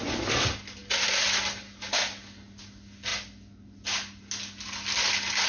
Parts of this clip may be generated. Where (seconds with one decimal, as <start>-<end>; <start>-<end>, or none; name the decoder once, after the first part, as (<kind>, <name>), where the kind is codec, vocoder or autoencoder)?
none